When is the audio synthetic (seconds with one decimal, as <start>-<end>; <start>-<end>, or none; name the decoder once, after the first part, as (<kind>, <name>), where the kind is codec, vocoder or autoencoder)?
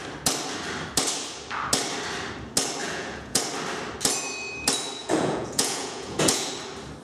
2.8-3.4 (vocoder, Vocos); 5.0-6.5